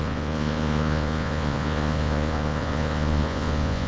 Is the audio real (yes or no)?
no